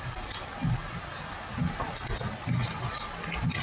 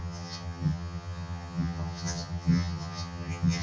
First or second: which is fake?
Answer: second